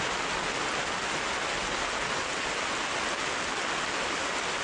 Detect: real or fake real